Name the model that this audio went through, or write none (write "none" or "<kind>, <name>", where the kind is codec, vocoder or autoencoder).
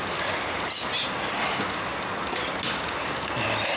none